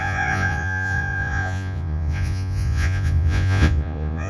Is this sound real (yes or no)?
no